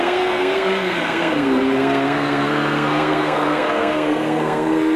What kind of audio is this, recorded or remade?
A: remade